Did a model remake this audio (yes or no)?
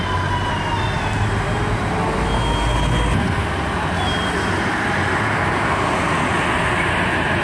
no